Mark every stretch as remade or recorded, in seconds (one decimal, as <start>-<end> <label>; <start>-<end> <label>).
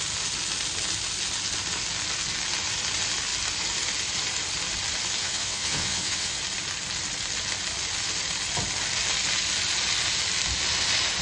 0.0-5.2 recorded; 5.2-6.4 remade; 6.4-11.2 recorded